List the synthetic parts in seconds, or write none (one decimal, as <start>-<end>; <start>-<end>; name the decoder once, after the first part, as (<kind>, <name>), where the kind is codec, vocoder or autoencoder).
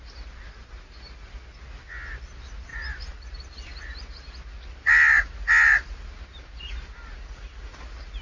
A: none